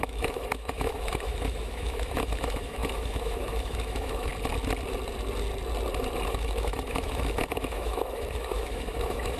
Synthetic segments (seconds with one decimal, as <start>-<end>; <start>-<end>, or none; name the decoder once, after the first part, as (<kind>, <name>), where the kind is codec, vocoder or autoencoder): 0.0-4.3 (autoencoder, DAC-VAE); 6.3-9.4